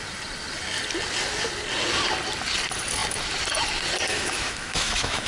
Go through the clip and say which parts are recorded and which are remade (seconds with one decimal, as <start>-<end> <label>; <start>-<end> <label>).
0.0-4.1 recorded; 4.1-5.3 remade